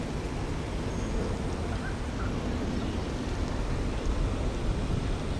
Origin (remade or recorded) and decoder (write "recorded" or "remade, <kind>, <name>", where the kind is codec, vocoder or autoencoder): recorded